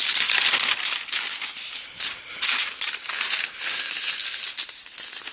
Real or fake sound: real